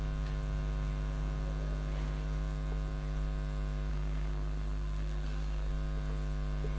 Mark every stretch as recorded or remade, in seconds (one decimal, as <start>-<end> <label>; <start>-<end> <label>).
0.0-3.9 recorded; 3.9-5.7 remade; 5.7-6.8 recorded